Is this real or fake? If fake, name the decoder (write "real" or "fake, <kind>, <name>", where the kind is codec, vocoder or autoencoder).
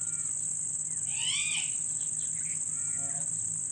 real